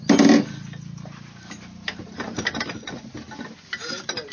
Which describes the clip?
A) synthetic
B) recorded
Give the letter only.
B